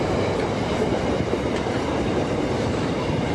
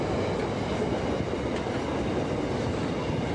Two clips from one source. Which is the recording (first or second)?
second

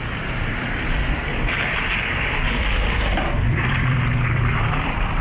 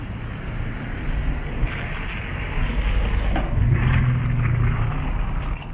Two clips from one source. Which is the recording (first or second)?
second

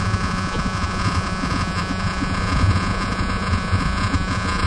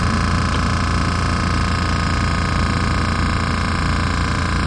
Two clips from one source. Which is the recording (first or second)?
second